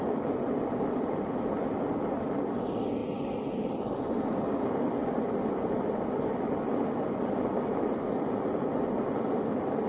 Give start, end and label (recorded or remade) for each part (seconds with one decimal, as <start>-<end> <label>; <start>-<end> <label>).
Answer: 0.0-9.9 recorded